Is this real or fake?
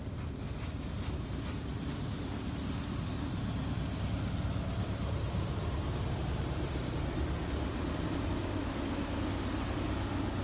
real